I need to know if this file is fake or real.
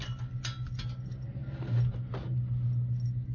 real